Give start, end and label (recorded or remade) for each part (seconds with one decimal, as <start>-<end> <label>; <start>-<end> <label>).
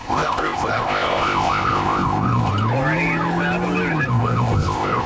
0.0-2.5 remade; 2.5-4.1 recorded; 4.1-5.1 remade